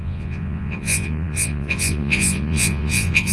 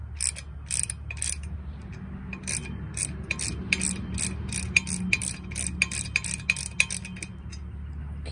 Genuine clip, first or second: second